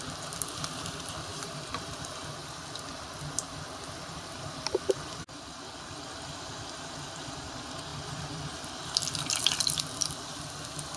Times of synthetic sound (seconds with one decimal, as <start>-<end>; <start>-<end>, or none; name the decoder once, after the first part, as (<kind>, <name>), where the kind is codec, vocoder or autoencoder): 1.3-2.1 (vocoder, BigVGAN v2)